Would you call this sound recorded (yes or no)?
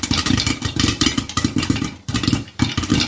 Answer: no